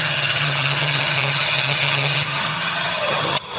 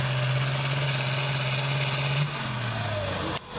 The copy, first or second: first